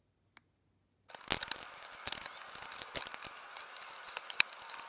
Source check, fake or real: real